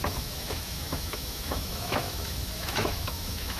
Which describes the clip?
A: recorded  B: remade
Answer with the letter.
B